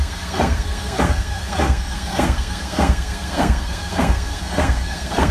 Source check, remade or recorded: remade